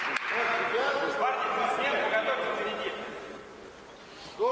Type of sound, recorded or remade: recorded